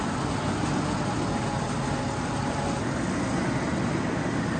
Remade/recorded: recorded